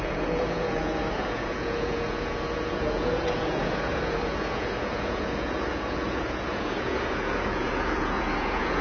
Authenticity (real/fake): fake